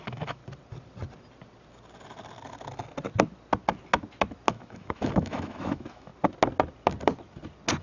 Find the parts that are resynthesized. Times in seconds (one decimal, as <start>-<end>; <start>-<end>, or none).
0.0-0.4; 4.5-6.1